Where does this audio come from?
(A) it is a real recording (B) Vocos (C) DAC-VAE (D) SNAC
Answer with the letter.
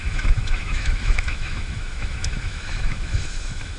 C